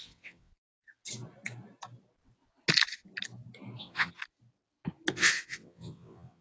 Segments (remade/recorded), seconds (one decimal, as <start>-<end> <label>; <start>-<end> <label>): 0.0-0.5 remade; 0.5-3.8 recorded; 3.8-4.2 remade; 4.2-5.1 recorded; 5.1-6.4 remade